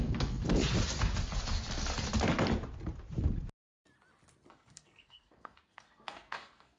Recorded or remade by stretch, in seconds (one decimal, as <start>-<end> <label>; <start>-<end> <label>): 0.0-0.4 remade; 0.4-4.5 recorded; 4.5-6.8 remade